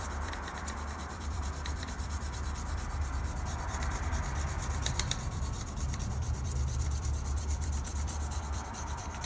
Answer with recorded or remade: remade